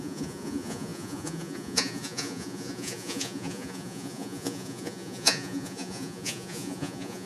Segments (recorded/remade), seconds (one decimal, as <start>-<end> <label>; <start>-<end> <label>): 0.0-7.3 remade